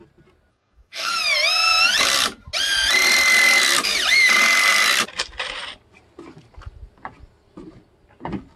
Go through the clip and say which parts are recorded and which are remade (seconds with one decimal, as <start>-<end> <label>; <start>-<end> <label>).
0.0-0.5 recorded; 0.5-1.1 remade; 1.1-8.6 recorded